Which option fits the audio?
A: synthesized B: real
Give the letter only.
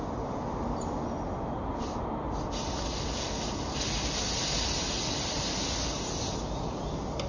B